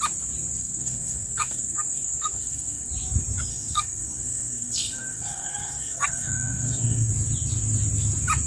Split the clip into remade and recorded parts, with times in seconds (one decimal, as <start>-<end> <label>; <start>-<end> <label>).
0.0-0.6 recorded; 0.6-2.9 remade; 2.9-3.5 recorded; 3.5-7.1 remade; 7.1-8.5 recorded